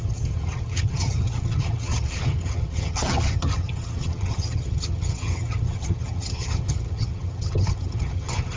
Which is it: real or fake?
fake